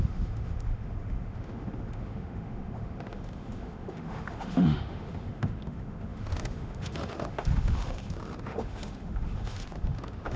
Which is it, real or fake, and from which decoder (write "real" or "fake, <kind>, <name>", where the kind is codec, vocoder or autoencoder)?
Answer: fake, autoencoder, DAC-VAE